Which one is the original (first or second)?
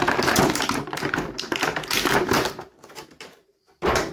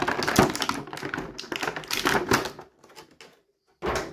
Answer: second